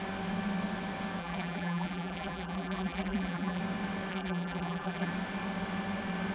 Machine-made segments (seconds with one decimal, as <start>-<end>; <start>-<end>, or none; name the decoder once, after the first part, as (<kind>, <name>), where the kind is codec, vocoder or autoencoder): 1.2-3.6 (vocoder, BigVGAN v2); 4.1-5.1